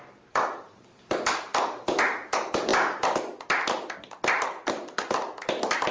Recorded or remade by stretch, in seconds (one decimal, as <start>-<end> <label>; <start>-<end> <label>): 0.0-5.9 recorded